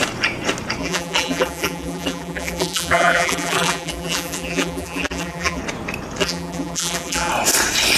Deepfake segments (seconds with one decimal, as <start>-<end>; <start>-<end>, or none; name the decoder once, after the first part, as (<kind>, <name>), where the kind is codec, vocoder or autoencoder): 0.8-5.6 (vocoder, BigVGAN v2); 6.2-7.3